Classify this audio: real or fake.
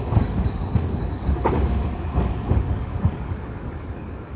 fake